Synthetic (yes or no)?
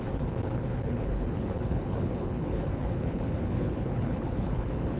yes